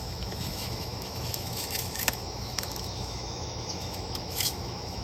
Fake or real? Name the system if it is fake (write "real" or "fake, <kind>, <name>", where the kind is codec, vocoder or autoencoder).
fake, autoencoder, DAC-VAE